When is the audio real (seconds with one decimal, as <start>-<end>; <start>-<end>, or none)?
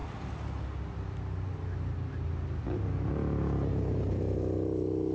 0.0-5.1